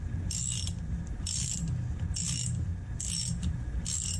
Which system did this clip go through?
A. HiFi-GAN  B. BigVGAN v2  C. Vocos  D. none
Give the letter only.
D